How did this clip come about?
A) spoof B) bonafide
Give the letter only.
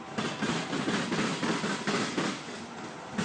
B